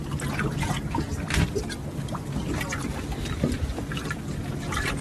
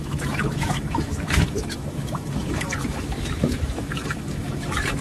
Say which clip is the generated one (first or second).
second